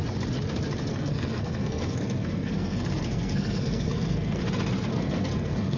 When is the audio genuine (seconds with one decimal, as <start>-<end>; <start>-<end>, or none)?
0.0-0.9; 4.4-4.9